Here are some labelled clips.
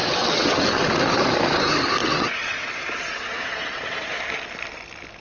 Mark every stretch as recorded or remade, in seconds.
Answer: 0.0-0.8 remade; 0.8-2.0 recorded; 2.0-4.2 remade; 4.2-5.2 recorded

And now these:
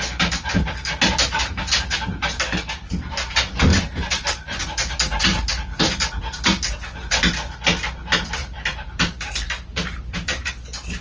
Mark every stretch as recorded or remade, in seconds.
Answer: 0.0-3.7 recorded; 3.7-4.6 remade; 4.6-8.4 recorded; 8.4-10.5 remade; 10.5-11.0 recorded

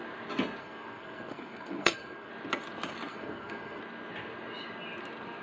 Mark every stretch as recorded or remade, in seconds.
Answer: 0.0-0.6 recorded; 0.6-2.3 remade; 2.3-3.1 recorded; 3.1-3.8 remade; 3.8-5.4 recorded

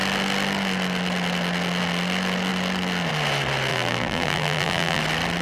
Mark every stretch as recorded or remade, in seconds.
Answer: 0.0-3.7 recorded; 3.7-5.0 remade; 5.0-5.4 recorded

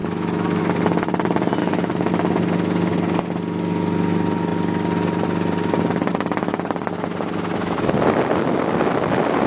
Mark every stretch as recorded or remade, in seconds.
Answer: 0.0-0.6 remade; 0.6-1.6 recorded; 1.6-2.1 remade; 2.1-9.5 recorded

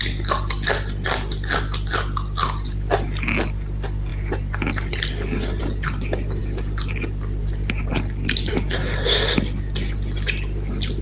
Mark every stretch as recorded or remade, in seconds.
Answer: 0.0-11.0 recorded

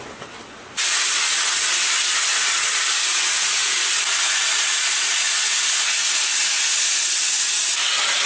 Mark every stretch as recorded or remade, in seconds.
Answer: 0.0-4.2 recorded; 4.2-7.2 remade; 7.2-8.3 recorded

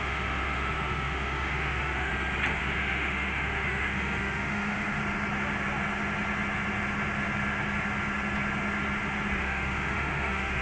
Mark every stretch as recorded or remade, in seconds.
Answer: 0.0-2.1 remade; 2.1-2.6 recorded; 2.6-5.0 remade; 5.0-9.4 recorded; 9.4-10.6 remade